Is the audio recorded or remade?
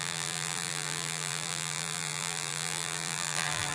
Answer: remade